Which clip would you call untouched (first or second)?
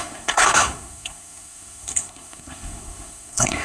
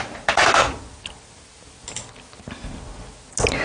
second